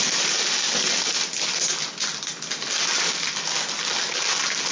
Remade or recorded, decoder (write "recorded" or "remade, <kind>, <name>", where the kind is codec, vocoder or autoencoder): recorded